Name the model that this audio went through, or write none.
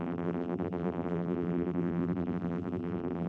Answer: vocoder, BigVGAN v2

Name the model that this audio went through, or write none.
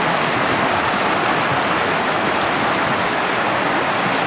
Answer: none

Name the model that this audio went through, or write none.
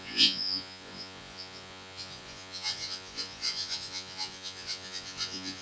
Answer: vocoder, Vocos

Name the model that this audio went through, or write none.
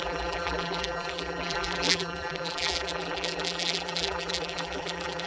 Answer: vocoder, BigVGAN v2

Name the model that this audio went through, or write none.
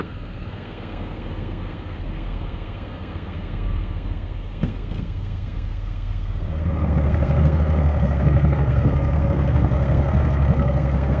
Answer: codec, SNAC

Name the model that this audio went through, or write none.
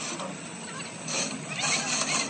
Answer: none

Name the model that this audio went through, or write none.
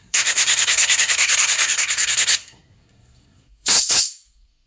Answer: codec, SNAC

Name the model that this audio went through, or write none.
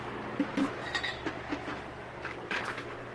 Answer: none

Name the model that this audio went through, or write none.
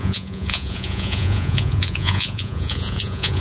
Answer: vocoder, Vocos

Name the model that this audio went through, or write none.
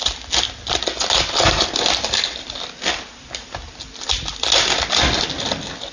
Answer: none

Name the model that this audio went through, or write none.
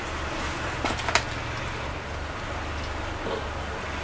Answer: none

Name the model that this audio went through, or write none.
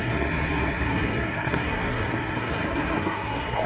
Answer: codec, SNAC